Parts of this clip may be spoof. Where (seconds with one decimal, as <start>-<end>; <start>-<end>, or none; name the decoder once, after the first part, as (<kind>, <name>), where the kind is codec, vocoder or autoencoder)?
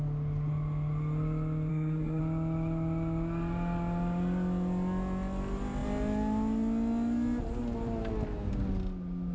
1.7-2.2 (codec, SNAC)